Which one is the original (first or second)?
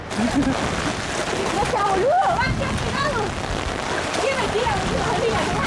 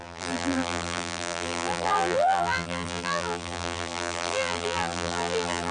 first